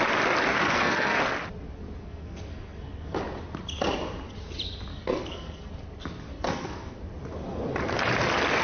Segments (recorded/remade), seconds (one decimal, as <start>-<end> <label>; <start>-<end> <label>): 0.0-0.5 recorded; 0.5-1.2 remade; 1.2-2.0 recorded; 2.0-3.2 remade; 3.2-4.9 recorded; 4.9-5.7 remade; 5.7-6.3 recorded; 6.3-7.0 remade; 7.0-8.6 recorded